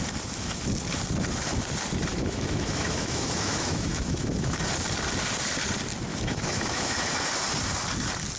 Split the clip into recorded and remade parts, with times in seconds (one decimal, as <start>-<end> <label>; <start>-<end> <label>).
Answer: 0.0-2.1 recorded; 2.1-4.6 remade; 4.6-6.1 recorded; 6.1-7.3 remade; 7.3-8.4 recorded